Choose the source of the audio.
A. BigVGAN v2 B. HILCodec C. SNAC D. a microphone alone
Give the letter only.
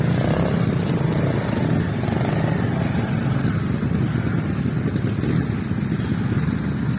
D